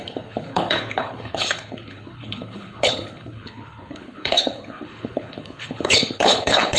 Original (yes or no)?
no